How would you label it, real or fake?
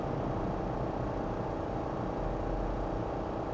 real